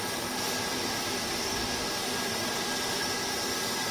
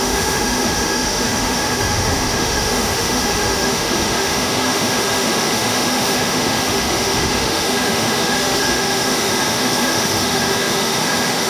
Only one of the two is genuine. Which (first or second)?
first